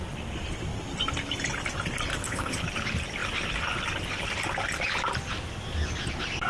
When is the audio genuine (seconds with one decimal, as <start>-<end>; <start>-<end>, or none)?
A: 0.0-2.1; 2.6-6.5